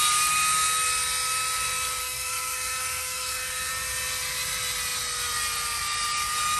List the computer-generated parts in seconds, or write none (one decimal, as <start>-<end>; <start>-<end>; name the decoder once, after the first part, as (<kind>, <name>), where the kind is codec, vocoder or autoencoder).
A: 2.0-3.7 (codec, SNAC)